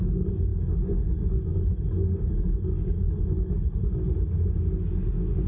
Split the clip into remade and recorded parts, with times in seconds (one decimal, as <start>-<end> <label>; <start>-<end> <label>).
0.0-5.5 recorded